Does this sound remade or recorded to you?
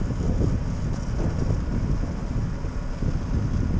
recorded